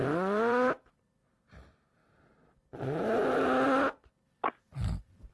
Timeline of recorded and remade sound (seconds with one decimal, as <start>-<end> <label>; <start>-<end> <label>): 0.0-1.0 remade; 1.0-5.3 recorded